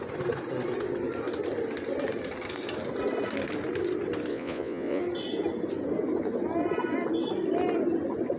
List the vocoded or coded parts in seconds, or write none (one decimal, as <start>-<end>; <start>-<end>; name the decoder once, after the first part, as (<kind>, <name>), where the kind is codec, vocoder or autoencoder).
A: 4.3-5.0 (vocoder, Vocos)